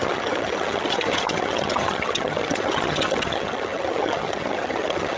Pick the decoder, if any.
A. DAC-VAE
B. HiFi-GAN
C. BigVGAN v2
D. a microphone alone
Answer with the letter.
B